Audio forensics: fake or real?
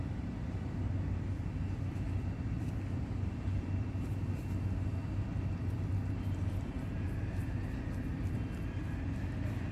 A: real